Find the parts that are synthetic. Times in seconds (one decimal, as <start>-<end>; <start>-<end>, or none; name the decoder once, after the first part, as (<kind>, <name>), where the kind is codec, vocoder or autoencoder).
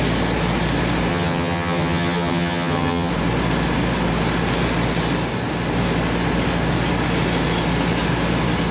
1.1-3.1 (vocoder, HiFi-GAN)